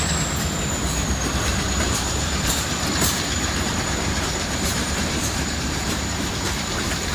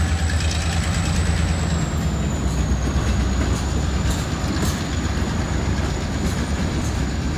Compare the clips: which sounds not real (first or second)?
first